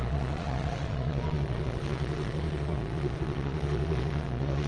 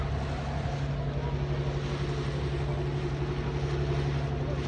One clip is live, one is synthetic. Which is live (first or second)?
second